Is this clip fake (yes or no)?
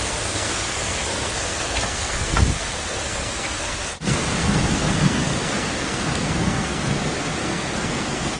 yes